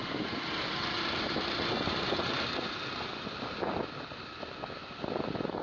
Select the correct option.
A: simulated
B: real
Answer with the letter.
B